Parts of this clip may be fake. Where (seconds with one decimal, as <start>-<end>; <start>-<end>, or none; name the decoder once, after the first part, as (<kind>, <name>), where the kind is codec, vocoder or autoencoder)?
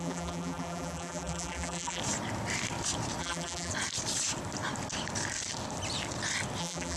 0.0-2.0 (vocoder, BigVGAN v2); 3.2-3.7; 6.6-7.0